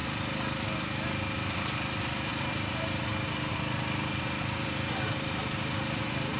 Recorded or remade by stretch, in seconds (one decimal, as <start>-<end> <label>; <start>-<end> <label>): 0.0-2.3 recorded; 2.3-3.1 remade; 3.1-4.4 recorded; 4.4-6.4 remade